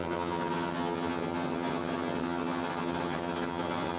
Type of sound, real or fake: fake